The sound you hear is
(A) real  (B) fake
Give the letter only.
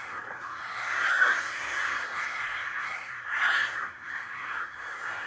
B